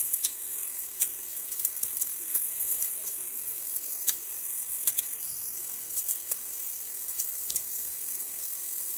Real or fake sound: fake